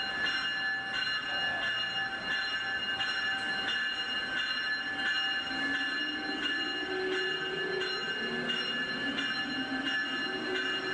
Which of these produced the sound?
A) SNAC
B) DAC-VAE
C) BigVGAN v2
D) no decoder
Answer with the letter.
D